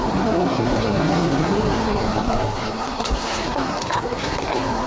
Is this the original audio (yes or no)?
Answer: no